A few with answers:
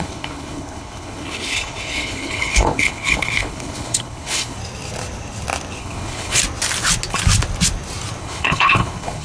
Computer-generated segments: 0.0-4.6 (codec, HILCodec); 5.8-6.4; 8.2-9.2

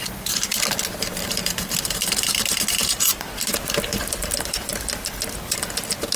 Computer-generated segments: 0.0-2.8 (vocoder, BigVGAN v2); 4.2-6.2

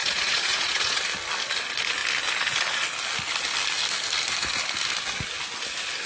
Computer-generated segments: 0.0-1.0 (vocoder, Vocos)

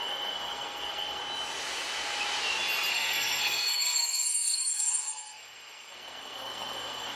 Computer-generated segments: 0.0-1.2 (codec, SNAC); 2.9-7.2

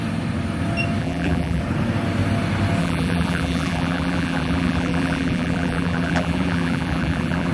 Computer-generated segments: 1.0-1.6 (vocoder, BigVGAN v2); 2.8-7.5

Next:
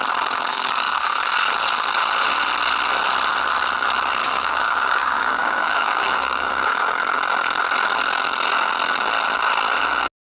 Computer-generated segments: 0.5-1.2 (codec, DAC); 4.2-6.5